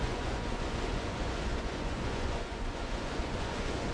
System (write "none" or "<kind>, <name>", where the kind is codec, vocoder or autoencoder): vocoder, Vocos